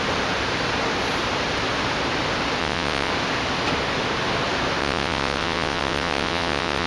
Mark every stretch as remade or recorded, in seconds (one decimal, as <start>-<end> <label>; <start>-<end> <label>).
0.0-2.6 recorded; 2.6-3.1 remade; 3.1-4.8 recorded; 4.8-6.9 remade